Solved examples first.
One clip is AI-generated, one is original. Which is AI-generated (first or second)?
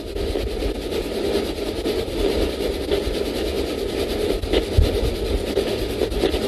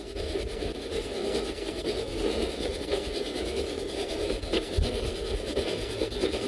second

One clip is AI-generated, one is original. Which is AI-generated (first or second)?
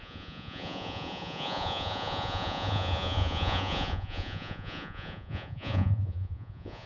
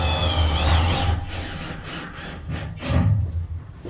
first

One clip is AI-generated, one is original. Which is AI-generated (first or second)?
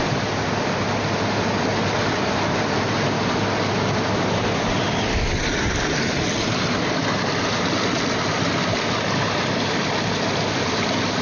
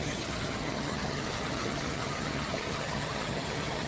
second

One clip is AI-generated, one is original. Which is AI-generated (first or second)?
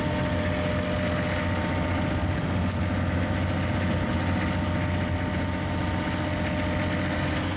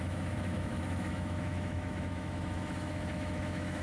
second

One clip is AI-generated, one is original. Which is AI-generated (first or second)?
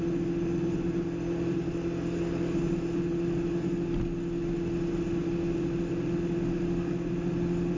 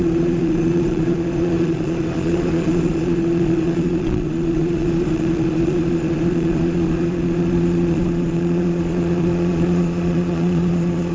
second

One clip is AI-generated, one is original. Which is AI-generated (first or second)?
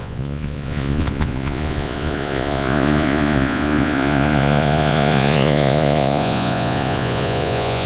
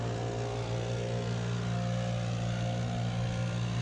first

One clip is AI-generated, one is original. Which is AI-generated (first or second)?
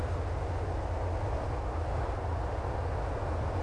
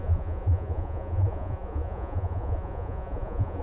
second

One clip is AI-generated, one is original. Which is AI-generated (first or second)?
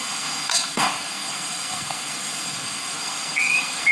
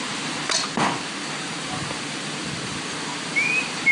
first